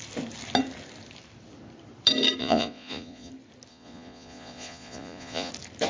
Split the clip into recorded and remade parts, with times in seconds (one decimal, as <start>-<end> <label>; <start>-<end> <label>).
0.0-2.4 recorded; 2.4-3.3 remade; 3.3-3.7 recorded; 3.7-5.5 remade; 5.5-5.9 recorded